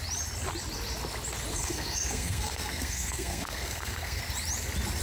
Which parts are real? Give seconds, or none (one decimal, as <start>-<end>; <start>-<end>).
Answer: 0.0-1.5; 4.2-5.0